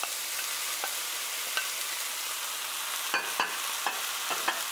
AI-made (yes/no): no